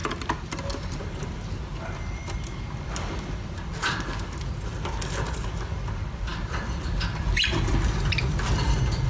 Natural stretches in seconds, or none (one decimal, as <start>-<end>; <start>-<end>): 0.0-9.1